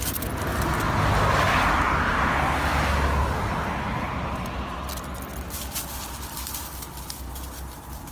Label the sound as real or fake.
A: real